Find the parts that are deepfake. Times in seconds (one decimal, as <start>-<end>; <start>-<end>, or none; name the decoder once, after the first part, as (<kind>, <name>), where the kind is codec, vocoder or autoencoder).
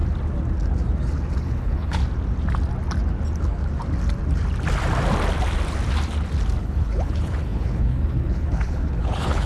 1.4-2.0 (codec, HILCodec); 6.6-9.5